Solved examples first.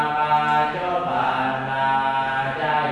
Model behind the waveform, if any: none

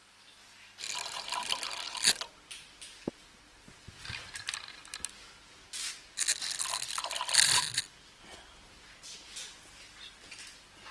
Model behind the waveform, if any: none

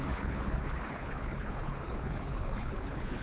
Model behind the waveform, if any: codec, HILCodec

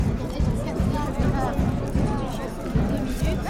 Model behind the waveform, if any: none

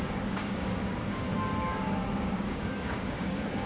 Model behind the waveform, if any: codec, DAC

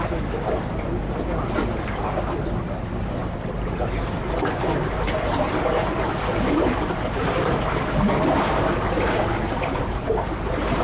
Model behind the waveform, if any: none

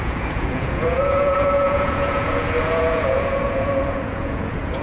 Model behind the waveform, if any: vocoder, Vocos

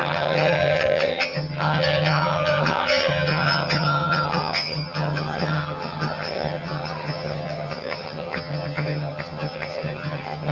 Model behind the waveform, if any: vocoder, HiFi-GAN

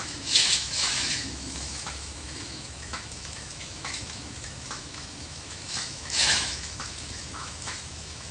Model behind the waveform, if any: autoencoder, DAC-VAE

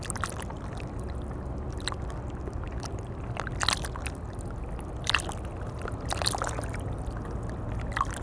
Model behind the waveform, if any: none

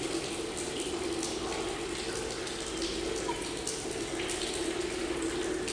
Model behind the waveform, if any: none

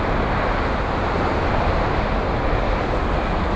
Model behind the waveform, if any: none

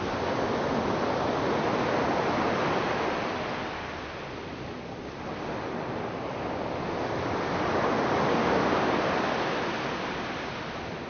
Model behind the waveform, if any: none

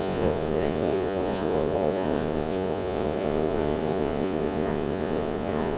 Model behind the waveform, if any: vocoder, Vocos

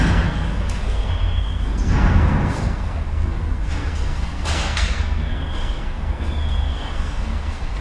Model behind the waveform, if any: codec, SNAC